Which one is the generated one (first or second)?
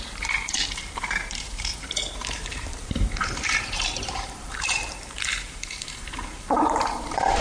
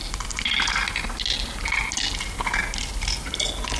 first